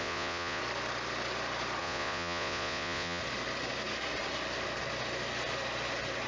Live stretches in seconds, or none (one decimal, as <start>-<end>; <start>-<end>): 0.6-1.8; 3.2-6.3